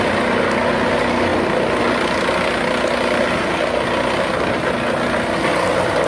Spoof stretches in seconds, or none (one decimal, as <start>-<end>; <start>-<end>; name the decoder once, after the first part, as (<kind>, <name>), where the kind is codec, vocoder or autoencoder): none